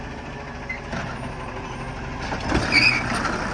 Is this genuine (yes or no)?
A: yes